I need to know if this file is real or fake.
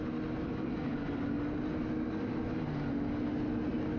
real